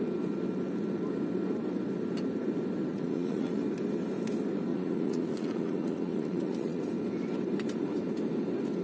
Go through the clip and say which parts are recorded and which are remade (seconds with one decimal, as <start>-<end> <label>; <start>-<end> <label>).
0.0-2.9 recorded; 2.9-3.6 remade; 3.6-4.7 recorded; 4.7-6.8 remade; 6.8-8.8 recorded